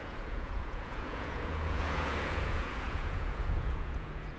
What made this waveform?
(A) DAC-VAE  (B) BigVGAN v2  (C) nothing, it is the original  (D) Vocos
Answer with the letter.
D